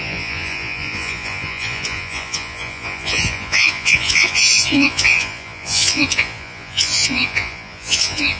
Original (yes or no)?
no